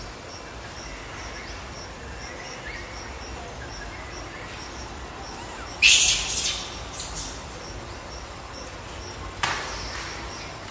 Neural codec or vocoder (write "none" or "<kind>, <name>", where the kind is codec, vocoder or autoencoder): none